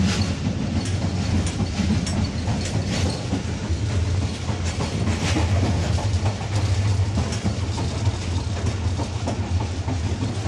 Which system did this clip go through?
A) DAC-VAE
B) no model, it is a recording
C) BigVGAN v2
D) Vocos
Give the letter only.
B